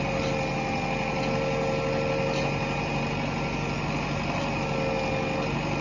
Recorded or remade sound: recorded